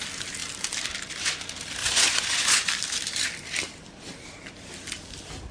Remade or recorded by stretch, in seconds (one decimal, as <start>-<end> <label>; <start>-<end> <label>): 0.0-1.8 recorded; 1.8-2.7 remade; 2.7-5.5 recorded